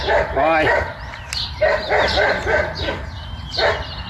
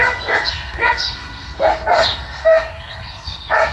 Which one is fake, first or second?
second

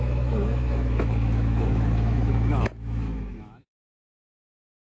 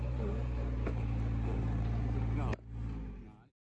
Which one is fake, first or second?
first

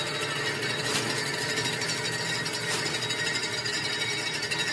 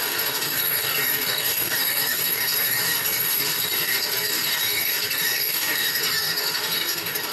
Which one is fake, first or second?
second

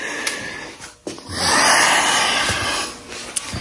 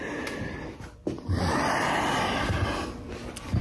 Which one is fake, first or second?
second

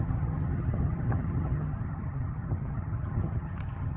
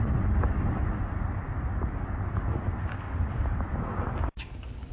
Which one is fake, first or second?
first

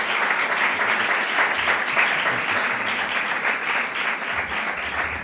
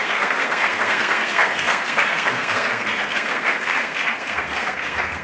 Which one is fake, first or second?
second